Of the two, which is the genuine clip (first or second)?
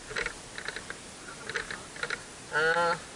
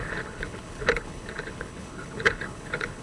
first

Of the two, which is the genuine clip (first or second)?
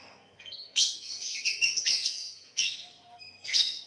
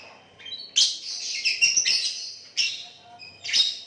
second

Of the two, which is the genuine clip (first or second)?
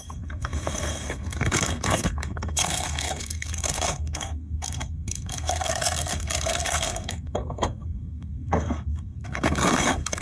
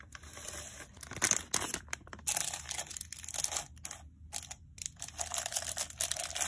second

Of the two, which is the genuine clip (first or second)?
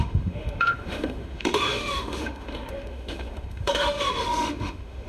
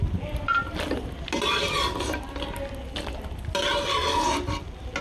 second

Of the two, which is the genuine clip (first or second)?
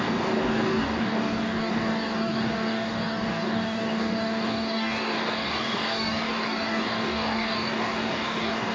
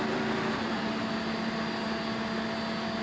second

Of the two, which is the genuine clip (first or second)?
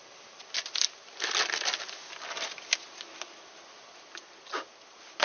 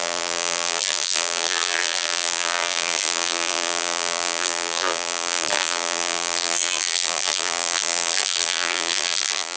first